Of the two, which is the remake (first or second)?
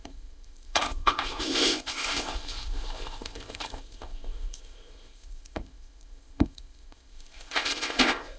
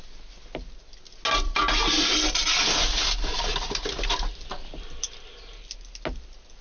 first